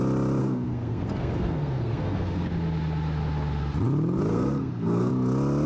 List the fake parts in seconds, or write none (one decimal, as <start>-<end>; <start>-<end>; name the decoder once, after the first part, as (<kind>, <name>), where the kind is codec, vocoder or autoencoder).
0.4-2.5 (codec, SNAC); 4.3-5.1